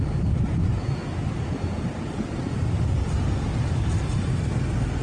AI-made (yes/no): no